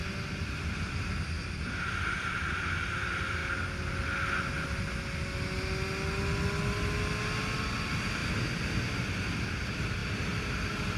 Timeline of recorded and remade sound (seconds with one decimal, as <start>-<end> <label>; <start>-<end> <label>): 0.0-11.0 recorded